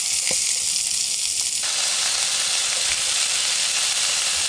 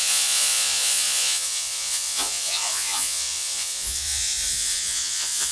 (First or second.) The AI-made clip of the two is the second